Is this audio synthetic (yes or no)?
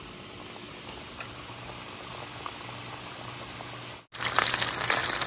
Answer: no